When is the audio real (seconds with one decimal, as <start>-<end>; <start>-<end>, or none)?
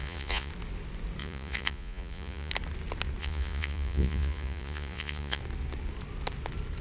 0.5-1.2; 2.5-3.2; 5.4-6.8